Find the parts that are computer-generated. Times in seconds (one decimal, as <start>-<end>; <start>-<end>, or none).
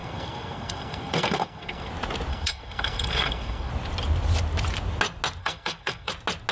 0.0-1.9; 2.3-3.7; 5.4-6.1